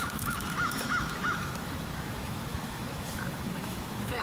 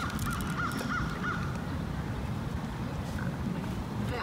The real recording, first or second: second